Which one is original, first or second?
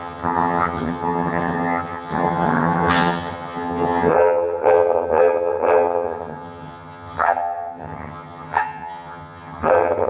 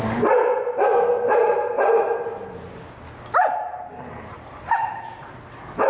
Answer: second